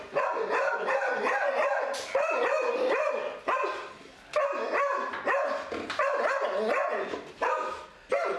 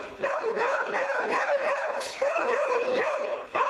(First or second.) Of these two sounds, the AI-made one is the second